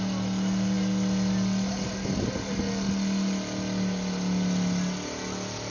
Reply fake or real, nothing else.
real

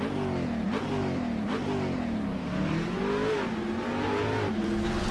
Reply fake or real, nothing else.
real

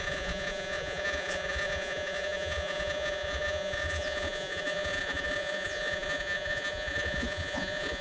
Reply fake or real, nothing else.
fake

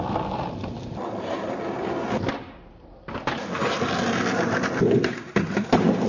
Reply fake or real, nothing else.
real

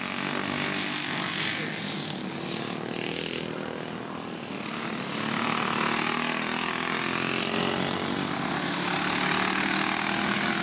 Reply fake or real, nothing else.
real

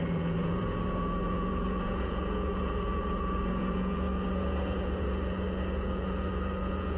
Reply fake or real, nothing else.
fake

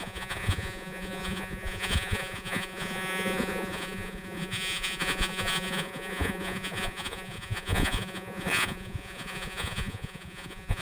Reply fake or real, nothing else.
fake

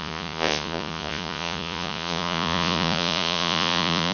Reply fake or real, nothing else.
fake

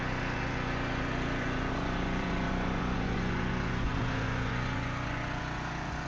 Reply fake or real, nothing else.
fake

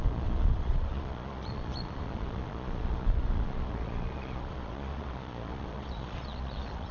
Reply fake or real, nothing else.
fake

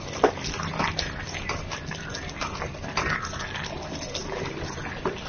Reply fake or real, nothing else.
real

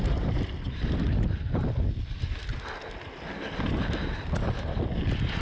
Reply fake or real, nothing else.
real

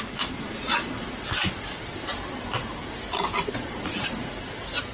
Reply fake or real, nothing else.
real